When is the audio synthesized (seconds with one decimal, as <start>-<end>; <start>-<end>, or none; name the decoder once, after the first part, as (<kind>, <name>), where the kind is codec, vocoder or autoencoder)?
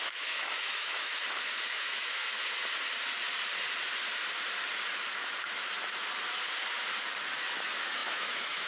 0.0-1.1 (autoencoder, DAC-VAE); 1.7-2.2; 7.4-8.7